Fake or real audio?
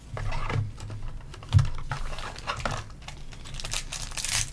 real